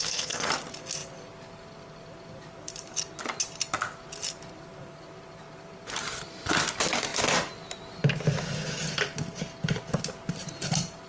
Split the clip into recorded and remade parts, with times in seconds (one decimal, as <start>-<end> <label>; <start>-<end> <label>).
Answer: 0.0-0.5 remade; 0.5-11.1 recorded